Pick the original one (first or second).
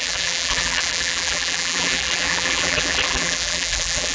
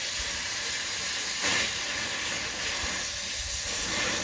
second